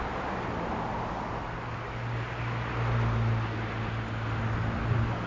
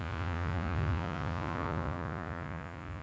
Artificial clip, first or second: second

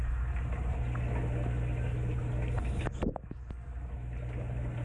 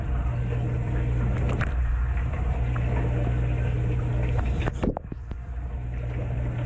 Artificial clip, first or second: second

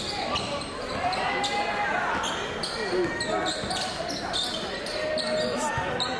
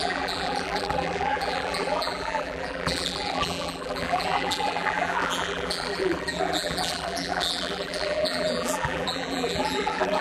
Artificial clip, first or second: second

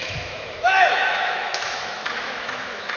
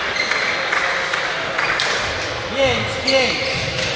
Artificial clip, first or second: first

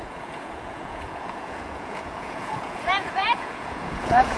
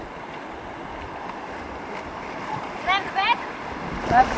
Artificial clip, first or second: first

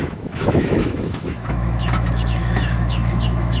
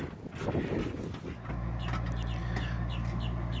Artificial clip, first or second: first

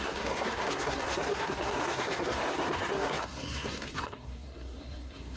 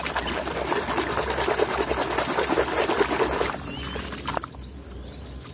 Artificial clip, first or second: first